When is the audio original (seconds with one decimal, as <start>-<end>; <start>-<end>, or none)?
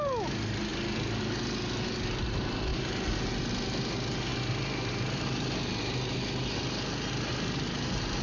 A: 0.0-0.7; 1.2-2.7; 3.5-8.2